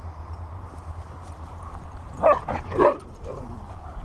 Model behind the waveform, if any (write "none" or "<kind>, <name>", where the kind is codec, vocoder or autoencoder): vocoder, BigVGAN v2